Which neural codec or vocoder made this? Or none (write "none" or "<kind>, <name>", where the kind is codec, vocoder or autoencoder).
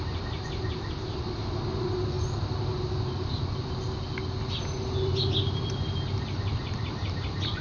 none